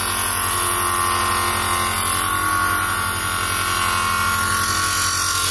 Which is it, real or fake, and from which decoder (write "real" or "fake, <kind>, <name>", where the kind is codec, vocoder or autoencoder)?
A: real